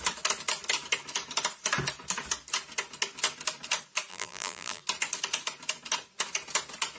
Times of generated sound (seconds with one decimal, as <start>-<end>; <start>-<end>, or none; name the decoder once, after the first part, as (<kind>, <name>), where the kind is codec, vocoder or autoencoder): 4.1-4.8 (vocoder, BigVGAN v2)